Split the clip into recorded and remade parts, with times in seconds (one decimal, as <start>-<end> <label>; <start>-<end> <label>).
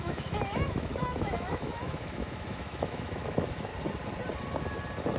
0.0-3.7 remade; 3.7-5.2 recorded